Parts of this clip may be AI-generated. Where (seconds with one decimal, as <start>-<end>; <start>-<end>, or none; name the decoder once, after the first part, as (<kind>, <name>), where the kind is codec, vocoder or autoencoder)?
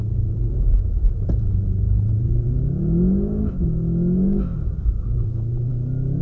0.0-2.6 (vocoder, BigVGAN v2); 4.5-5.7